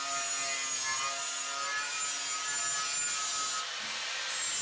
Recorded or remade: recorded